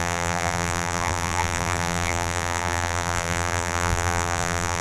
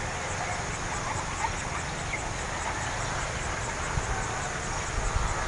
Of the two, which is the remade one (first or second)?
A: first